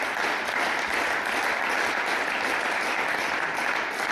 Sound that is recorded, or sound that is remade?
recorded